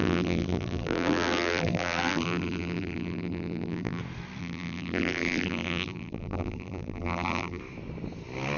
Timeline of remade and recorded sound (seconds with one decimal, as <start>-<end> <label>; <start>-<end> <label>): 0.0-4.0 remade; 4.0-4.4 recorded; 4.4-7.6 remade; 7.6-8.6 recorded